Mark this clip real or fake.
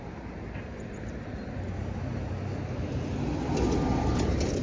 real